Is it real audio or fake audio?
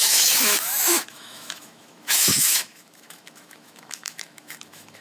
fake